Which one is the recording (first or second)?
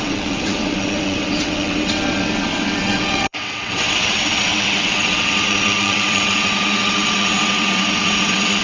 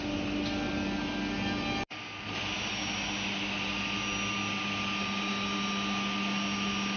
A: second